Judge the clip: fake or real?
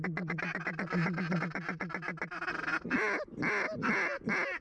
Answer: real